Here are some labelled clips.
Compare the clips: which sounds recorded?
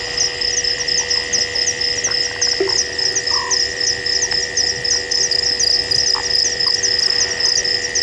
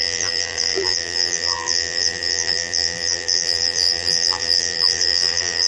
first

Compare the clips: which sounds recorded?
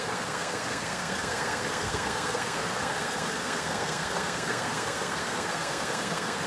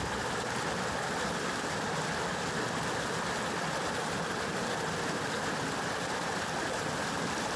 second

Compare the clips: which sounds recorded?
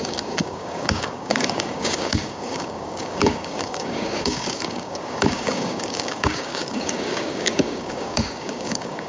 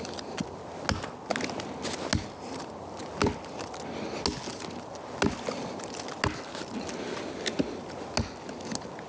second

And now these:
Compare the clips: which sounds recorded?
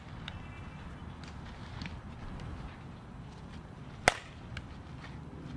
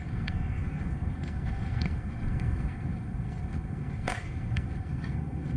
first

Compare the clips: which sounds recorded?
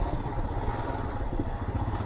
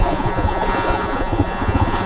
first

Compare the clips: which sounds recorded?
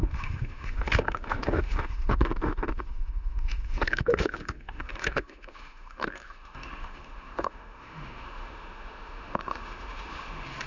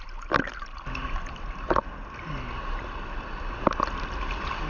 second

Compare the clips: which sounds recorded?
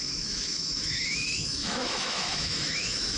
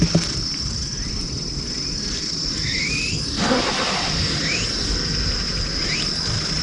second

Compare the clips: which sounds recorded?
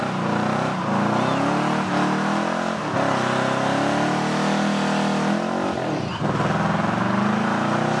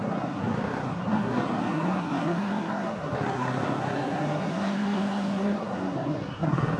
first